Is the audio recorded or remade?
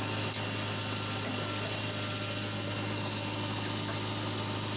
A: recorded